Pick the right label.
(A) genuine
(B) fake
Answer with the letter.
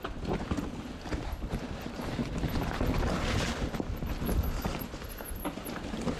A